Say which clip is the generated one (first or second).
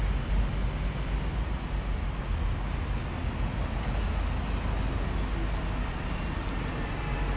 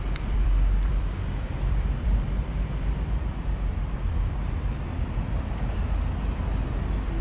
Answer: second